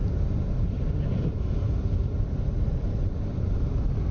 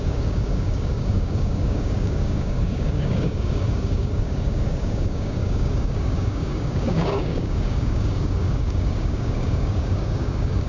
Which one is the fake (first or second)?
second